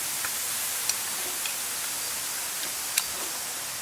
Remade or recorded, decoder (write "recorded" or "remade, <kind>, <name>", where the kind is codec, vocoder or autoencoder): recorded